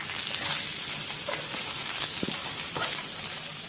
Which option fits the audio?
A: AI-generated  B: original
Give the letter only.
B